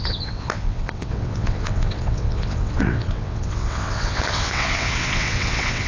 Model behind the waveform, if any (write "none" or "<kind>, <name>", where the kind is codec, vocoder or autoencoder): vocoder, WaveNeXt